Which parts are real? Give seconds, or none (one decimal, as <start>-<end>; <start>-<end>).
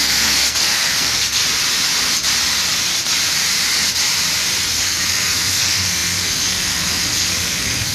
1.4-4.8